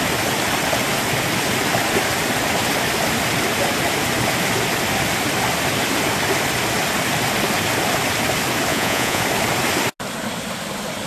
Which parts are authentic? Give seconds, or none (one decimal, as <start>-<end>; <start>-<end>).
0.0-8.7; 9.2-11.1